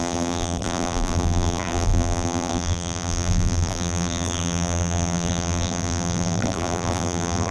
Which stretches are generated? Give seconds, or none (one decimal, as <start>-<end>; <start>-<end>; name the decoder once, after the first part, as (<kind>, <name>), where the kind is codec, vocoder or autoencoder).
0.0-7.5 (vocoder, BigVGAN v2)